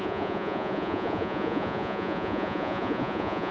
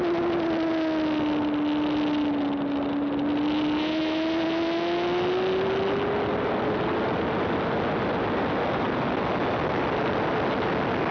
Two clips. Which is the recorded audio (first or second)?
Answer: second